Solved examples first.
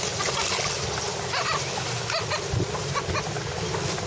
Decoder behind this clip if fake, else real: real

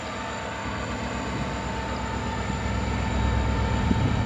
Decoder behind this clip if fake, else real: real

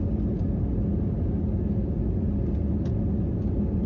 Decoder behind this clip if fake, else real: real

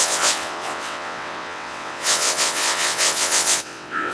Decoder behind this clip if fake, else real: fake, vocoder, WaveNeXt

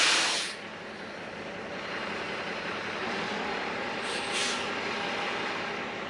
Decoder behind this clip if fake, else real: real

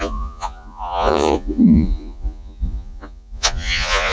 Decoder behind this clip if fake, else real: fake, vocoder, Vocos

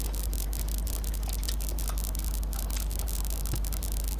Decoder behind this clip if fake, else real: real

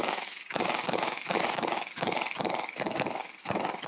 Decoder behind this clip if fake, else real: fake, codec, DAC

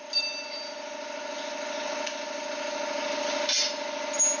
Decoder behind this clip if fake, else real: real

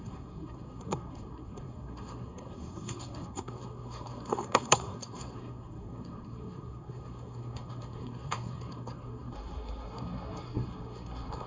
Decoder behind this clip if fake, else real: fake, codec, SNAC